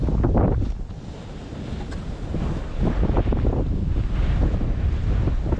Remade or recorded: recorded